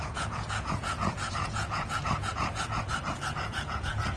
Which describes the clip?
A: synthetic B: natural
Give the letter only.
A